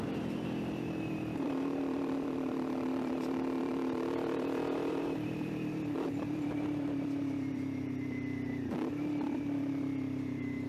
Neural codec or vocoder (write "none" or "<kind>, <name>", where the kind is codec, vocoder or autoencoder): vocoder, BigVGAN v2